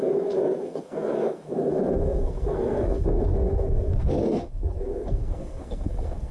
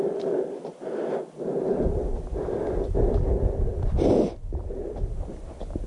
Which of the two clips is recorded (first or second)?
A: second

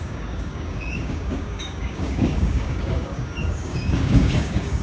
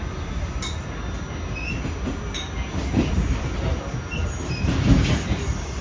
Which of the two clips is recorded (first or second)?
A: second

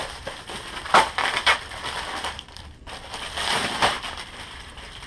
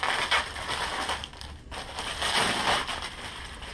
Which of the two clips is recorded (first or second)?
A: second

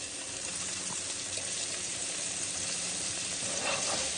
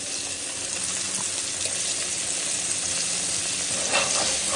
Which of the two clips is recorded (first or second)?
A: second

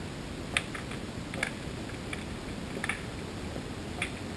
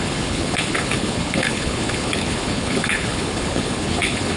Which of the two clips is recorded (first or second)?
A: first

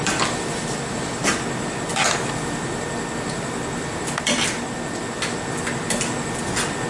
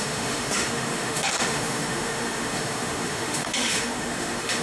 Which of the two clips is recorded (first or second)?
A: first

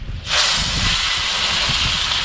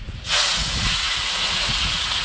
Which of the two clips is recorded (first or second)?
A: first